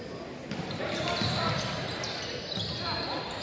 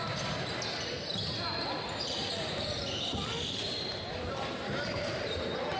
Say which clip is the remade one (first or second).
first